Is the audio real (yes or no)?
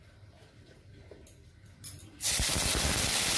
yes